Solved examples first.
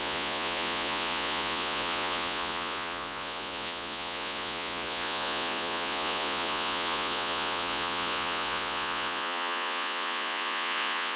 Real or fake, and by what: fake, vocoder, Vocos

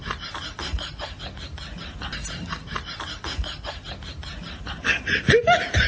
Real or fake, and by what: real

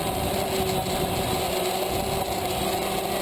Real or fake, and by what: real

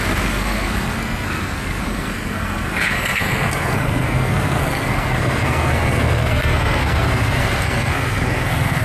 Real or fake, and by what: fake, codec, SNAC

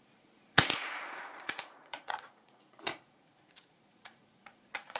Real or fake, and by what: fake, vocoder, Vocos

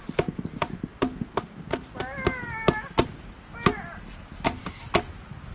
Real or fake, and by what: real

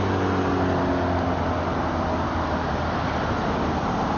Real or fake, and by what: real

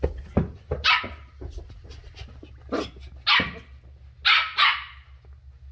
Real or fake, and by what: real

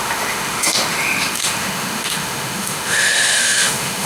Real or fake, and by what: fake, autoencoder, DAC-VAE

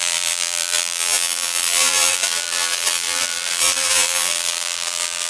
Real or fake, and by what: fake, vocoder, BigVGAN v2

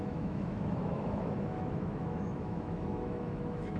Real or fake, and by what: fake, autoencoder, DAC-VAE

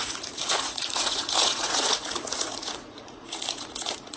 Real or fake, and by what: fake, vocoder, Vocos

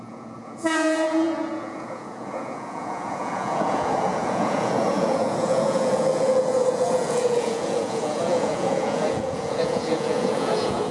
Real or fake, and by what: fake, vocoder, Vocos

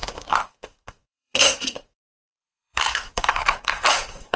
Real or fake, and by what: fake, codec, SNAC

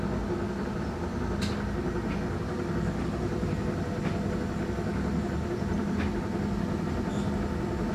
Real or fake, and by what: real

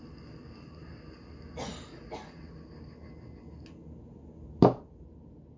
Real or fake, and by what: real